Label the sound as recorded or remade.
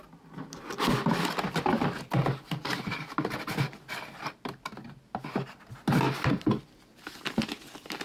recorded